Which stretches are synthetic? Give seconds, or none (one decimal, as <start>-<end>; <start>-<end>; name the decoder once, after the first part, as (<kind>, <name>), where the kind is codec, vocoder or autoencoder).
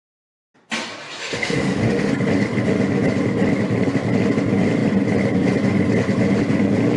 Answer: 1.2-2.1 (autoencoder, DAC-VAE)